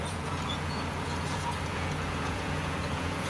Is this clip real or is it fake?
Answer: fake